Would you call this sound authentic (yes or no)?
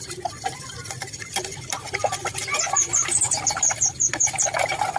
no